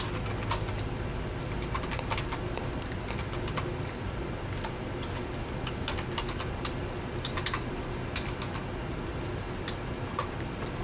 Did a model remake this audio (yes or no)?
no